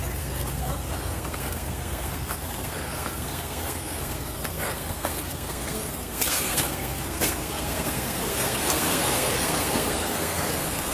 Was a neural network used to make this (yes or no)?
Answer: yes